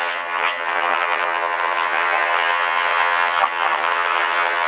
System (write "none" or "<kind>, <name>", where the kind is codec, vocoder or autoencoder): vocoder, HiFi-GAN